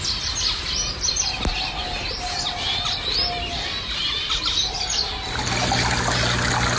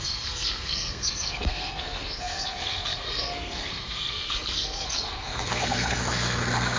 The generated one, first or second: second